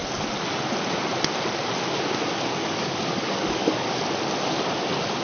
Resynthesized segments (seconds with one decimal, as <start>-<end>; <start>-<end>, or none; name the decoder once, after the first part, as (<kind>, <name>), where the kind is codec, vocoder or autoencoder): 2.6-4.0 (codec, DAC)